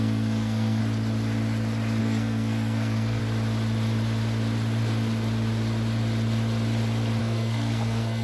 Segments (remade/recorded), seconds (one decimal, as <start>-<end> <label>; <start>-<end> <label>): 0.0-0.8 remade; 0.8-2.0 recorded; 2.0-3.2 remade; 3.2-7.2 recorded; 7.2-8.2 remade